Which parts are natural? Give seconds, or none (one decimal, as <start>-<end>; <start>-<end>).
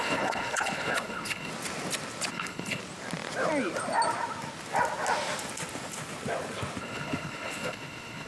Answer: 1.5-2.3; 2.8-6.8